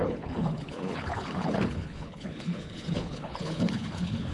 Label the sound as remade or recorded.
remade